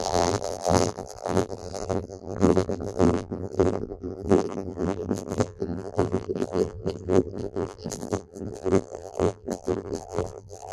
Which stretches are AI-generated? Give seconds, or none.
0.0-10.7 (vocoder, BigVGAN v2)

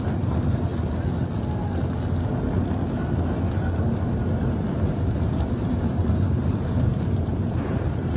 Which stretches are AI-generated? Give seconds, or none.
0.0-0.7 (vocoder, BigVGAN v2); 3.5-8.2

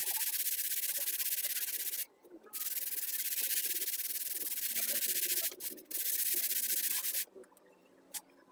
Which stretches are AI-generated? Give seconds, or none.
0.0-1.3 (vocoder, BigVGAN v2); 2.0-6.3

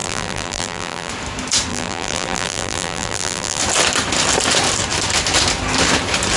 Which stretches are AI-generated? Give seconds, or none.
0.0-1.1 (vocoder, BigVGAN v2); 1.7-3.6

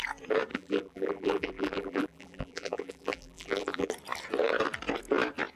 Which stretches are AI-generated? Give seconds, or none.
0.5-3.9 (vocoder, BigVGAN v2)

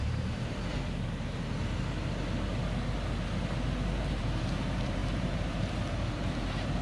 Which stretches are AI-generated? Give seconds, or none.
0.0-0.7 (vocoder, BigVGAN v2); 4.2-6.8